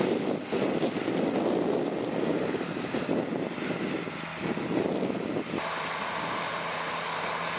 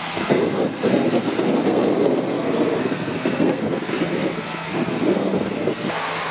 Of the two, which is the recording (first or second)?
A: first